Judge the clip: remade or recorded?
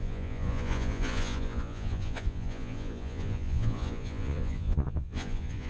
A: remade